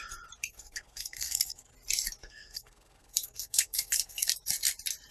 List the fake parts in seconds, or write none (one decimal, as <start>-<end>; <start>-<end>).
0.4-1.7; 2.2-4.3